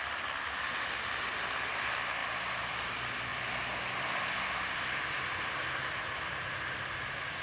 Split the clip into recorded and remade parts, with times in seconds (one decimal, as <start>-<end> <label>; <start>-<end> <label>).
0.0-2.2 recorded; 2.2-2.9 remade; 2.9-7.4 recorded